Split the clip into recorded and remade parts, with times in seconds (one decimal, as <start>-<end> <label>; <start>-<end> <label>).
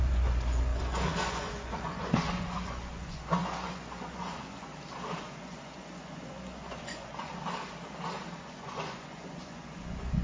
0.0-4.7 remade; 4.7-5.2 recorded; 5.2-7.3 remade; 7.3-8.4 recorded; 8.4-10.2 remade